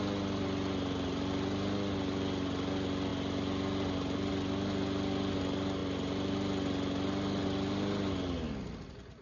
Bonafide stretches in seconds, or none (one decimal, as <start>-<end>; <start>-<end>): 0.0-9.2